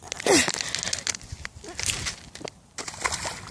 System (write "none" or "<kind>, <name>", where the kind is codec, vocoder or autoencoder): none